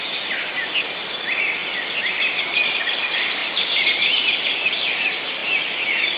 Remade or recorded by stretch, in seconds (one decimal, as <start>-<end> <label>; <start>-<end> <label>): 0.0-3.4 recorded; 3.4-4.2 remade; 4.2-5.4 recorded; 5.4-6.2 remade